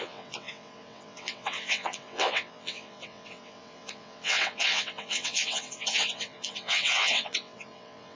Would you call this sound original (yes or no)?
no